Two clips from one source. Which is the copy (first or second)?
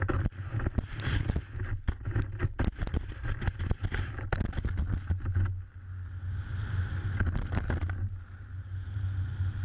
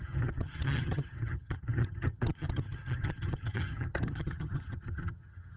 second